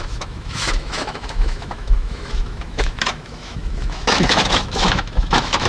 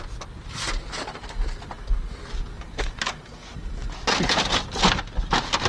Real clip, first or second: second